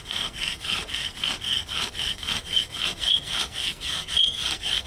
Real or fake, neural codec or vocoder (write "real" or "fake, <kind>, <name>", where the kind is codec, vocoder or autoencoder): fake, codec, SNAC